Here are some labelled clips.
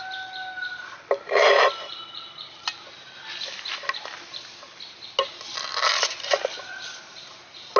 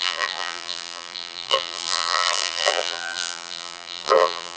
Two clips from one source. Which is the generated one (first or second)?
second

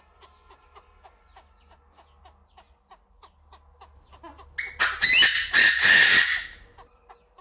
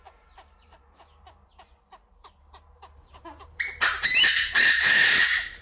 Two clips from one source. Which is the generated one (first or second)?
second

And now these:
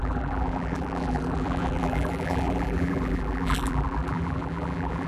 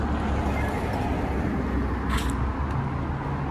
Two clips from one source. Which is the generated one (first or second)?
first